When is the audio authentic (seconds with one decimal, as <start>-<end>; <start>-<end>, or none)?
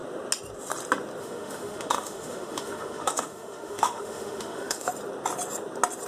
0.0-1.2; 4.9-6.1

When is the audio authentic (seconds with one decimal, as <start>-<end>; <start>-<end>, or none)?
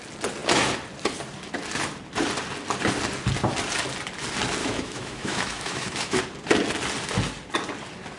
0.0-4.6; 6.2-8.2